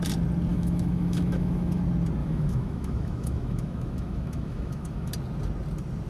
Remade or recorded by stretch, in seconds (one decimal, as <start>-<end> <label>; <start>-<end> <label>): 0.0-0.5 recorded; 0.5-1.8 remade; 1.8-2.2 recorded; 2.2-5.1 remade; 5.1-6.1 recorded